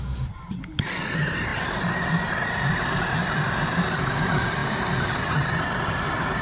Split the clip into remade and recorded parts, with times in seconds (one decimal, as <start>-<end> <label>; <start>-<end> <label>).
0.0-4.6 remade; 4.6-5.1 recorded; 5.1-6.4 remade